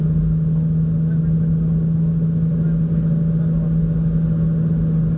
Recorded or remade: recorded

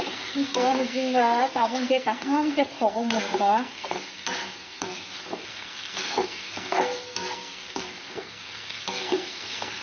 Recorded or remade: remade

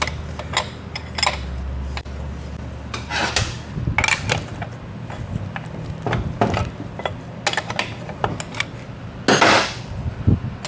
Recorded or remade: recorded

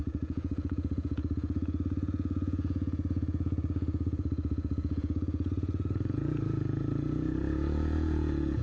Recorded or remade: remade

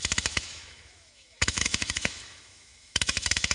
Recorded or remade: remade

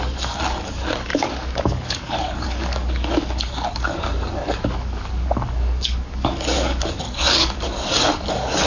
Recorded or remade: remade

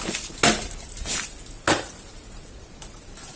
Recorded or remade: recorded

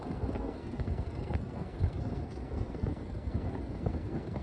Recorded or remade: remade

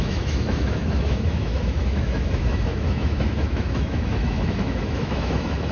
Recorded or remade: remade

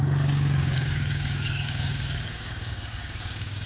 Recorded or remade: remade